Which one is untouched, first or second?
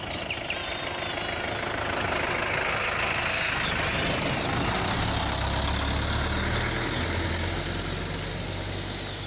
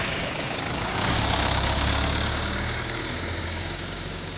first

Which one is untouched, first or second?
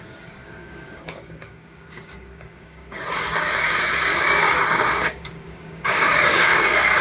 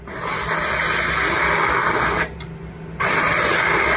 second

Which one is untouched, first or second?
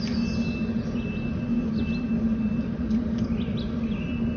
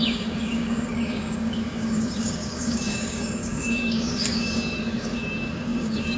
first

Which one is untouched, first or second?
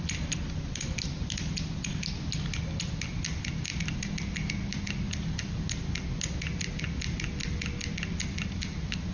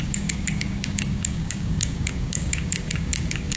first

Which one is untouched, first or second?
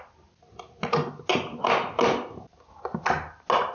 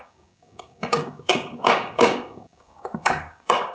first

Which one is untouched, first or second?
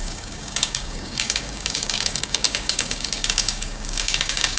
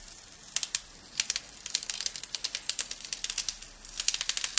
second